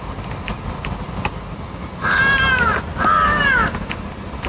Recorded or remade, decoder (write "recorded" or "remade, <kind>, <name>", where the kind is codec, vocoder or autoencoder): recorded